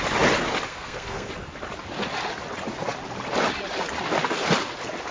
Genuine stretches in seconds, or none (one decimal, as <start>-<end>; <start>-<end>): 0.0-0.7; 1.3-5.1